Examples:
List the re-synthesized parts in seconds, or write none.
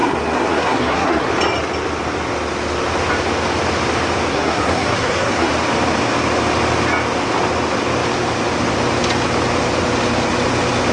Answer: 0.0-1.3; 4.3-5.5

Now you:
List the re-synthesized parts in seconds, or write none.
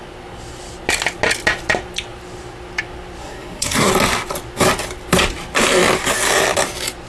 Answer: 3.2-3.9